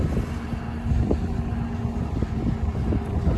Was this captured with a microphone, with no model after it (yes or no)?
yes